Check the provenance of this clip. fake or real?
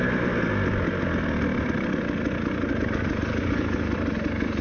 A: real